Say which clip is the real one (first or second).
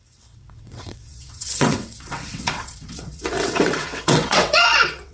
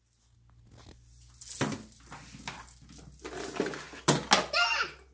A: second